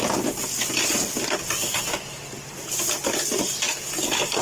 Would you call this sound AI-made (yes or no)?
no